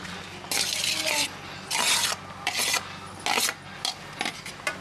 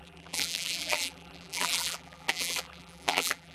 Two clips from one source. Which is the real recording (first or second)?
first